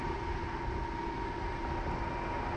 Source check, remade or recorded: recorded